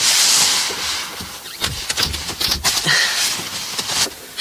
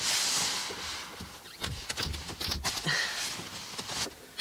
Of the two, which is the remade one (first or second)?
first